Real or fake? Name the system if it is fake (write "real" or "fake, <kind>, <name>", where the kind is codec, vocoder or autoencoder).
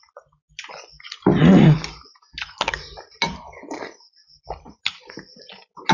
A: real